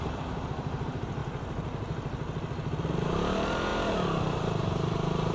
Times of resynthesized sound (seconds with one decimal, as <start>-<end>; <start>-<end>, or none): 0.0-1.2; 3.1-5.3